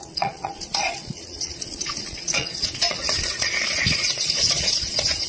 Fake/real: fake